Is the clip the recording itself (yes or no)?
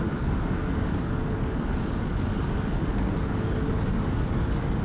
no